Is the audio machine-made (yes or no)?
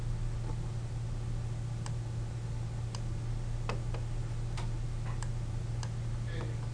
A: no